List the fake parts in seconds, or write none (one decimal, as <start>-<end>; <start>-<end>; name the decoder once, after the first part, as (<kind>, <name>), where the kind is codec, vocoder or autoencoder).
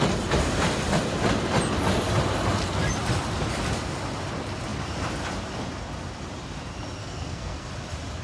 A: 7.0-7.7 (codec, SNAC)